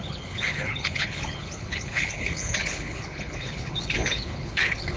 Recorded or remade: remade